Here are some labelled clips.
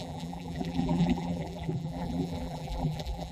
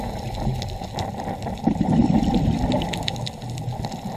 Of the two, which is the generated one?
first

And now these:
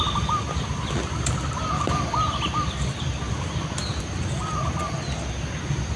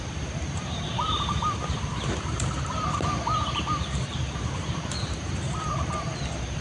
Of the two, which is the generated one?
second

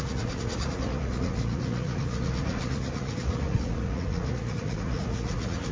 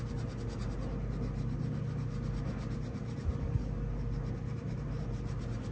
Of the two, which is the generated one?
first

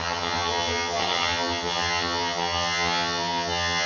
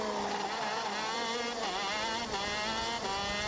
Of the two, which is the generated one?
first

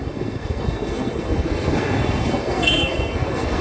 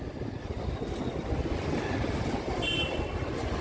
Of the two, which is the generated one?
first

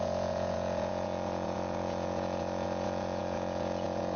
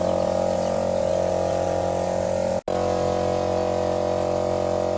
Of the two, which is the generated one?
first